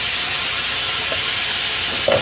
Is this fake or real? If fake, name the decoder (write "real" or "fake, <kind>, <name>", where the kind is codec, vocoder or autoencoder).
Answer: real